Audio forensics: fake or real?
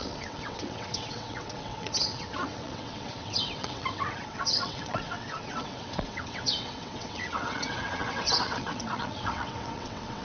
fake